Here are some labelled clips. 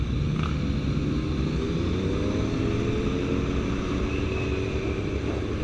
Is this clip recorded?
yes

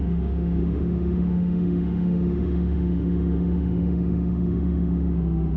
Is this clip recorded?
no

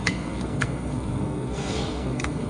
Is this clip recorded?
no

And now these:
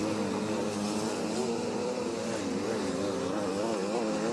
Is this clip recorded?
yes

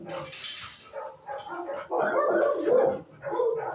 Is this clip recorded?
yes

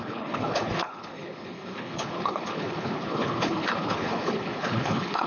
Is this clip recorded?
no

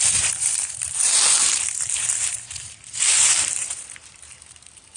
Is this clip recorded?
no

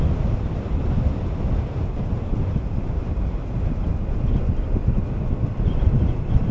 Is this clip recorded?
yes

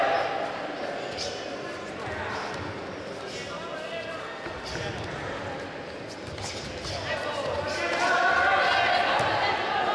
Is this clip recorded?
yes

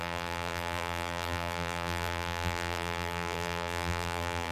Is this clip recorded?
no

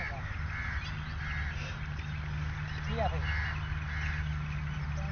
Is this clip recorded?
yes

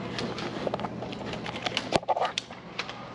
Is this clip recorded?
yes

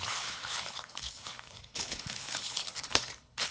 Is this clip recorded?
no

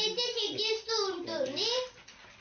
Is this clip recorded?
yes